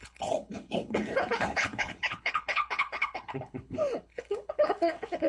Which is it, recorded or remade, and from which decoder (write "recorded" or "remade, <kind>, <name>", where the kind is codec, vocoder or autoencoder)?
remade, codec, HILCodec